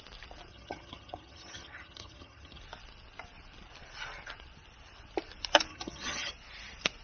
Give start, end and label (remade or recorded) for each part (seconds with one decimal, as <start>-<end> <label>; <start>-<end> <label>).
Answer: 0.0-0.5 recorded; 0.5-2.6 remade; 2.6-5.7 recorded; 5.7-6.3 remade; 6.3-7.0 recorded